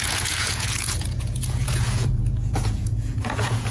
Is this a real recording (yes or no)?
no